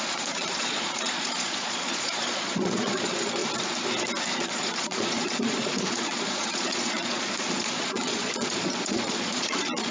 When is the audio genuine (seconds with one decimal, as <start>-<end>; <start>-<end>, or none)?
3.4-4.3